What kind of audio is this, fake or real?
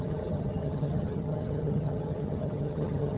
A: fake